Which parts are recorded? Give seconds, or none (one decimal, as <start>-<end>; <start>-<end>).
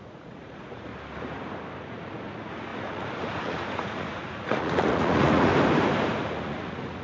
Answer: 0.9-1.8; 5.5-6.2